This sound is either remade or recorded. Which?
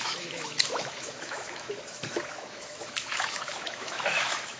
remade